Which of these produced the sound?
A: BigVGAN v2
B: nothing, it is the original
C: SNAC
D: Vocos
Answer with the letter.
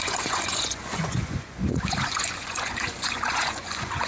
D